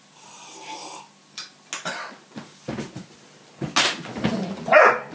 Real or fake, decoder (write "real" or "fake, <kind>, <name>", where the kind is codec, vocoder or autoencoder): real